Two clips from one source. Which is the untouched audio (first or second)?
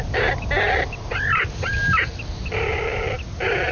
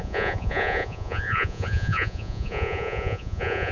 first